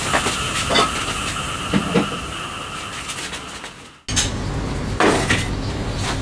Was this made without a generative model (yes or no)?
yes